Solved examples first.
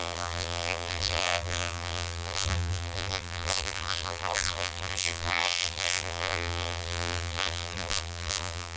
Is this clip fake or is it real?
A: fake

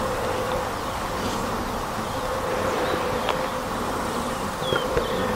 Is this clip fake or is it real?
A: real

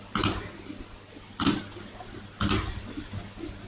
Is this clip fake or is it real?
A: real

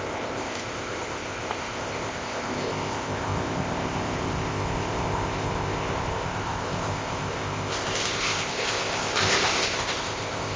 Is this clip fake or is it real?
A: fake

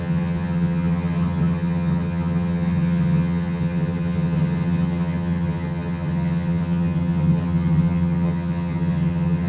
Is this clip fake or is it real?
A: fake